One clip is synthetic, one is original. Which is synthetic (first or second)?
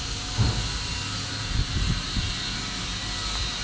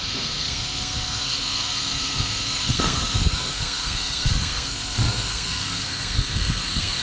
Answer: second